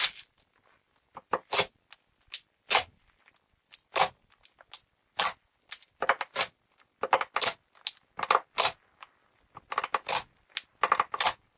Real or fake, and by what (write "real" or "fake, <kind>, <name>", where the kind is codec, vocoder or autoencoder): real